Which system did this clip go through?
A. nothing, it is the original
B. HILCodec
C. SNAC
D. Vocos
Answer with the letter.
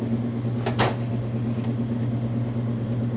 A